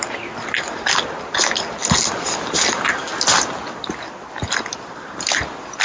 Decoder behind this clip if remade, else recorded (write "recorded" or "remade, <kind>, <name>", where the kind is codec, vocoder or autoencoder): recorded